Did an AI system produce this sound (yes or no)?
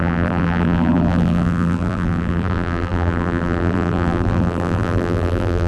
yes